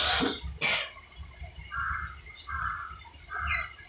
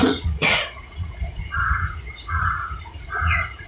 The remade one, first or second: second